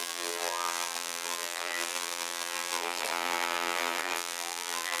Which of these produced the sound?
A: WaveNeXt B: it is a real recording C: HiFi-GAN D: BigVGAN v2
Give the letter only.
D